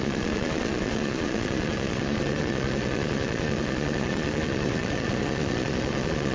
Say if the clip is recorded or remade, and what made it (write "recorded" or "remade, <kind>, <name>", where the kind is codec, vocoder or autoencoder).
remade, vocoder, Vocos